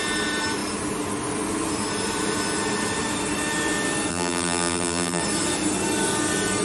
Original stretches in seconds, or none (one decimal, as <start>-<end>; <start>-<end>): 0.0-4.1; 5.2-6.6